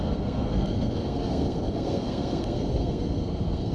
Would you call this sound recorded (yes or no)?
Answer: no